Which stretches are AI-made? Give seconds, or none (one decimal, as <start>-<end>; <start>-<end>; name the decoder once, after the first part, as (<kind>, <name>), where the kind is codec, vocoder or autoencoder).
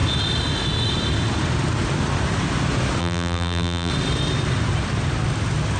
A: 3.0-3.9 (vocoder, BigVGAN v2)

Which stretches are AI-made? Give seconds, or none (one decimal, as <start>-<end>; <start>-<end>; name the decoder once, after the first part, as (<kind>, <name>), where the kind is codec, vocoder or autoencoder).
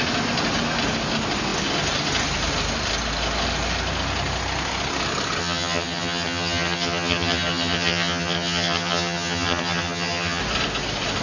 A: 5.4-10.4 (vocoder, HiFi-GAN)